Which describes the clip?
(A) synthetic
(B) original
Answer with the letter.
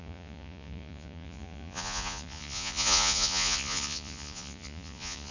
A